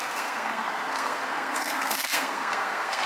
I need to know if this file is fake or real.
fake